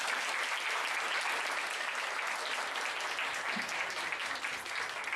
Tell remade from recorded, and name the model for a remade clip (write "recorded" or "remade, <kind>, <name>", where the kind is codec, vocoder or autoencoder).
recorded